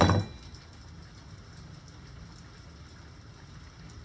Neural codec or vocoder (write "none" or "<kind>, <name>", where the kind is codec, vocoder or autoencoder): none